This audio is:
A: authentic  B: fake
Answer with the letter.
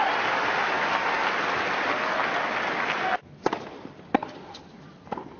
A